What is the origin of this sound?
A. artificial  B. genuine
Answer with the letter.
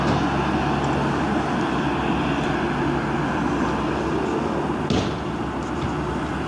B